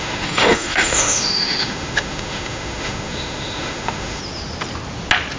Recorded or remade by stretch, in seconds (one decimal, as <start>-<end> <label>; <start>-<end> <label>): 0.0-4.2 remade; 4.2-5.4 recorded